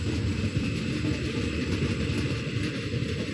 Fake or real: real